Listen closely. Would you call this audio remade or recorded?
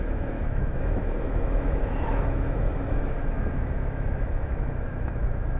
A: remade